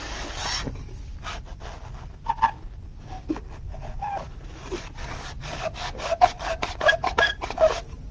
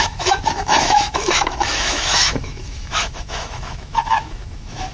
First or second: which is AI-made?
second